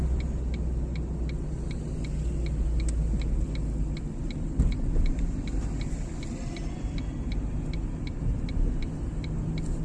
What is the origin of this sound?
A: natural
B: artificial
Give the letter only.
A